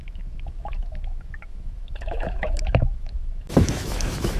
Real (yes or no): no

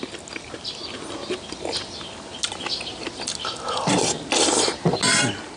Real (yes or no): yes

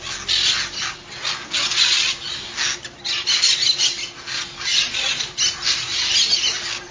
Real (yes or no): yes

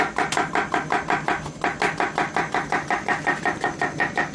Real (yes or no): yes